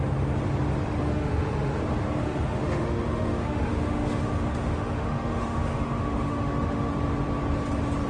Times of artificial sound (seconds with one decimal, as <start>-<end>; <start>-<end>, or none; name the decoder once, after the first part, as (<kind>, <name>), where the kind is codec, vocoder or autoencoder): 1.0-1.8 (autoencoder, DAC-VAE); 2.2-6.9